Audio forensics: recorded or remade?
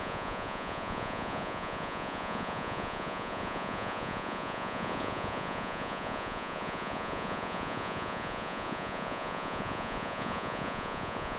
remade